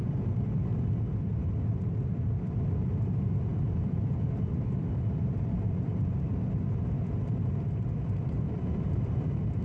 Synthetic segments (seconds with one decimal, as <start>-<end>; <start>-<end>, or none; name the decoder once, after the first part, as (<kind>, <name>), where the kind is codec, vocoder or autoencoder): 0.0-0.7 (vocoder, BigVGAN v2); 1.8-9.6

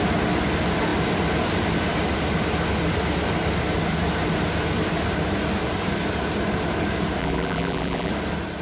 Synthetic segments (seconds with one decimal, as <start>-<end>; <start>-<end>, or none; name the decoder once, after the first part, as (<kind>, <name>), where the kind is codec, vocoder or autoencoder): 7.2-8.1 (vocoder, BigVGAN v2)

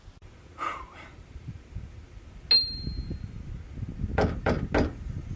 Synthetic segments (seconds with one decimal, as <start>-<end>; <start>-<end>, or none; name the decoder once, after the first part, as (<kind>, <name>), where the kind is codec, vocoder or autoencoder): 0.5-1.9 (vocoder, BigVGAN v2); 2.9-4.5

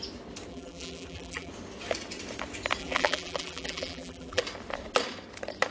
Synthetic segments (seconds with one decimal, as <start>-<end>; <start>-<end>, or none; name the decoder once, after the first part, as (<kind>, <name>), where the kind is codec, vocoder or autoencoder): 0.5-1.5 (vocoder, BigVGAN v2); 2.8-4.4

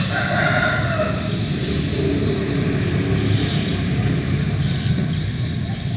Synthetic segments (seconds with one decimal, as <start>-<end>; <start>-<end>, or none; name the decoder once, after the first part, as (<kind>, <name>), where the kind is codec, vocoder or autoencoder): 3.7-4.6 (vocoder, BigVGAN v2)